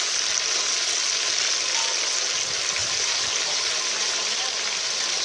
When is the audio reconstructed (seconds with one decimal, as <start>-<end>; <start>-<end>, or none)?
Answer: 2.8-5.2